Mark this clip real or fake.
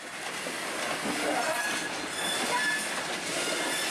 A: real